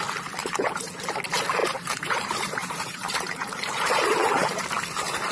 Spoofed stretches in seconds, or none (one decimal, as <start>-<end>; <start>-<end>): 0.4-0.9; 1.6-4.6